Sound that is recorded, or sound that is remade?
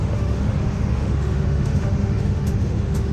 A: remade